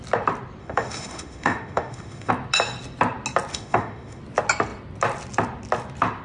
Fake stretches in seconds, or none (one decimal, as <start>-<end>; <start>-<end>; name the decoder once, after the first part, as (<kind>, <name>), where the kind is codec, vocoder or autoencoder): 0.6-2.3 (autoencoder, DAC-VAE); 3.5-4.2